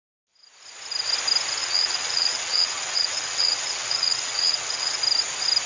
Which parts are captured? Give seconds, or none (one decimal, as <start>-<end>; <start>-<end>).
0.0-1.6; 5.0-5.7